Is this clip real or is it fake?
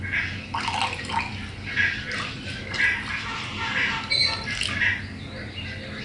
real